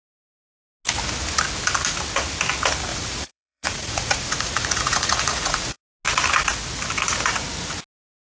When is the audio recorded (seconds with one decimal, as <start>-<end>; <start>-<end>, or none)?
0.0-2.9; 5.8-8.3